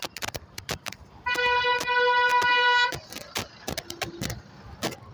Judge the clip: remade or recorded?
recorded